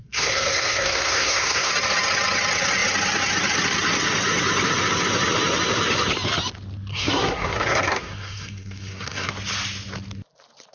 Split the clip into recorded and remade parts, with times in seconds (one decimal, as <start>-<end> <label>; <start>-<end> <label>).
0.0-1.7 remade; 1.7-6.9 recorded; 6.9-9.3 remade; 9.3-10.7 recorded